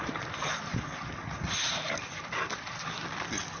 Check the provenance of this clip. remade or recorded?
recorded